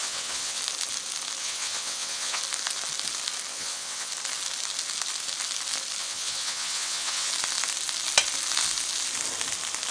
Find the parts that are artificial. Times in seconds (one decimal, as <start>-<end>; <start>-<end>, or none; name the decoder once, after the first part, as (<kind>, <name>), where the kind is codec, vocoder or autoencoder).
0.0-0.6 (vocoder, WaveNeXt); 1.4-2.4; 3.5-4.1; 6.0-7.3